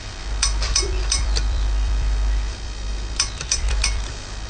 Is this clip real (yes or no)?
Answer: no